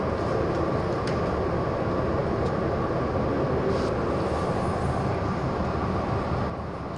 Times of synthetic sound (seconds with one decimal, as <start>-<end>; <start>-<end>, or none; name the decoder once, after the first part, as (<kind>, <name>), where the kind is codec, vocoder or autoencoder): none